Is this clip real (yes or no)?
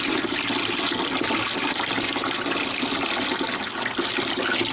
yes